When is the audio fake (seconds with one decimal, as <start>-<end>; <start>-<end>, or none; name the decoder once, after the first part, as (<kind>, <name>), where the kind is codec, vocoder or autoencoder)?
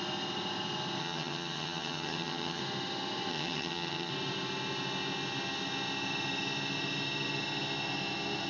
1.0-2.6 (vocoder, HiFi-GAN); 3.3-4.1